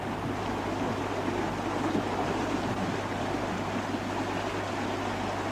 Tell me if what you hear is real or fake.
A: real